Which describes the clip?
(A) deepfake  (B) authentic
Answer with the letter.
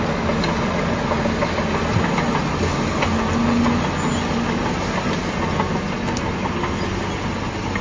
B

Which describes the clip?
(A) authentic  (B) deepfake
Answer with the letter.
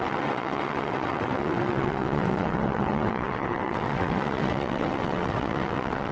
B